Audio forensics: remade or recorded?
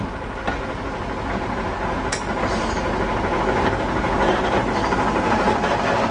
recorded